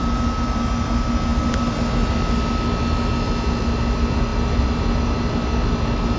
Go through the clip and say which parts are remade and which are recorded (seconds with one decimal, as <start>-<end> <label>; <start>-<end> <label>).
0.0-6.2 recorded